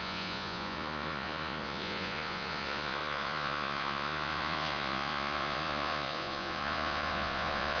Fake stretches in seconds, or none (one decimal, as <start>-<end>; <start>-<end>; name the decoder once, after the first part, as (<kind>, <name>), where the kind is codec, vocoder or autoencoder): 0.0-7.8 (vocoder, Vocos)